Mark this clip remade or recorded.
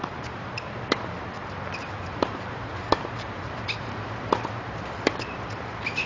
remade